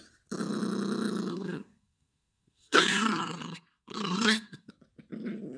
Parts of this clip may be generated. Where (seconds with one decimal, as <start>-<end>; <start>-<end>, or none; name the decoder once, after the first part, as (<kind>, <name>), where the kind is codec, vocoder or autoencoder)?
1.3-4.7 (codec, SNAC)